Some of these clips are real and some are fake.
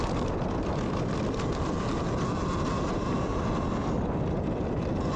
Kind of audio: real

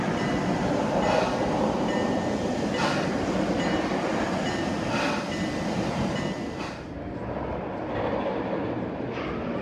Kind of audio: real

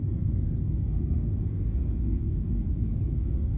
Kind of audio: fake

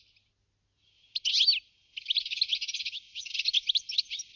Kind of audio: real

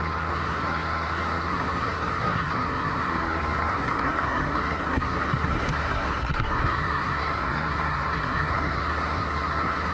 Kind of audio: fake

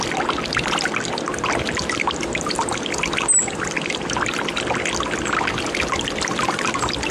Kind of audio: real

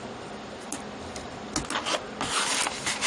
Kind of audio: real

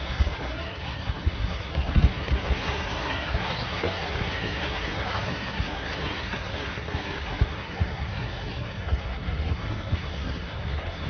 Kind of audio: fake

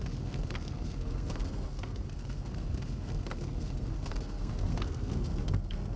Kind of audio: fake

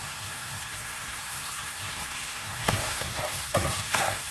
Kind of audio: fake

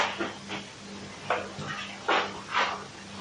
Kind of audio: real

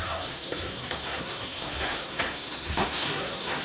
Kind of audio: fake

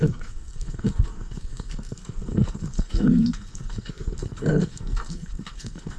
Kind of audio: fake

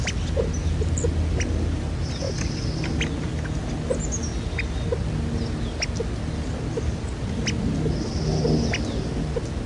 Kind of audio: real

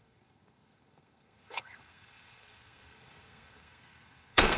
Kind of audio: fake